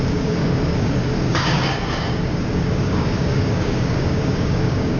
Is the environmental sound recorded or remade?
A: remade